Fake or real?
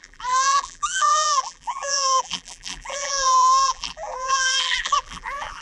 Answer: fake